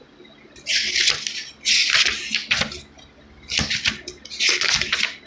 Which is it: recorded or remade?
recorded